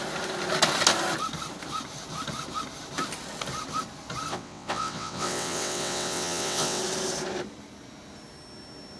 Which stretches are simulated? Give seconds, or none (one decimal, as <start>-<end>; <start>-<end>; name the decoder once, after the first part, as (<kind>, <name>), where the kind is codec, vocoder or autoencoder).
4.3-6.8 (vocoder, WaveNeXt)